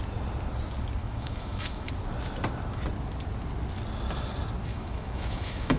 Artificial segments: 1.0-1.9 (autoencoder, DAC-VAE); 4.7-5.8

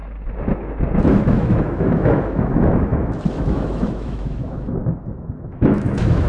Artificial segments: 1.0-6.3 (autoencoder, DAC-VAE)

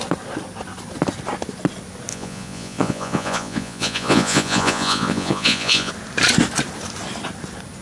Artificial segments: 2.1-5.9 (vocoder, Vocos)

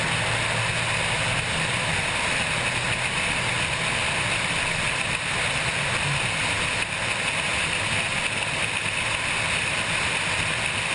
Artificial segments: none

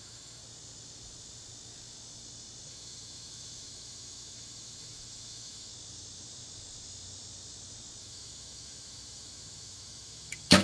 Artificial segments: 0.0-0.4 (autoencoder, DAC-VAE); 2.7-5.7; 8.0-10.6

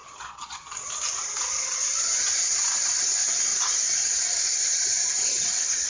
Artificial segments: 0.0-0.7 (vocoder, Vocos)

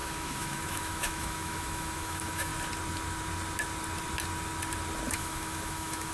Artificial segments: 0.0-2.5 (autoencoder, DAC-VAE); 5.1-6.1